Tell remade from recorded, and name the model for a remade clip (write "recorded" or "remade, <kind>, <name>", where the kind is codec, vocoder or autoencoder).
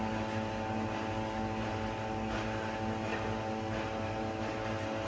recorded